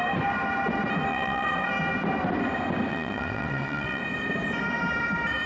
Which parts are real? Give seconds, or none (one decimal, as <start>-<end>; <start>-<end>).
0.0-1.1; 1.7-2.9; 4.0-5.5